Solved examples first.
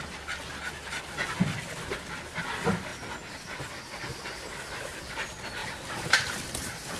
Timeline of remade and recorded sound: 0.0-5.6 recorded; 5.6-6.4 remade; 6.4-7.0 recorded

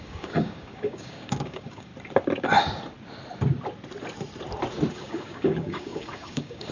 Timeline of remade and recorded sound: 0.0-1.9 remade; 1.9-4.9 recorded; 4.9-6.7 remade

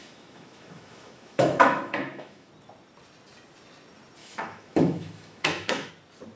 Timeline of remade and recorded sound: 0.0-2.5 remade; 2.5-4.2 recorded; 4.2-5.9 remade; 5.9-6.4 recorded

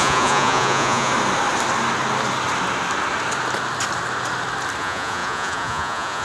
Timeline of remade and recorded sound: 0.0-1.1 remade; 1.1-4.8 recorded; 4.8-6.2 remade

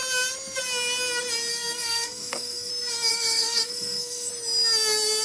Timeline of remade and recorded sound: 0.0-1.5 recorded; 1.5-2.7 remade; 2.7-3.1 recorded; 3.1-4.3 remade; 4.3-5.2 recorded